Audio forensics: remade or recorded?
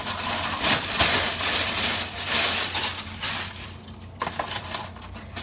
recorded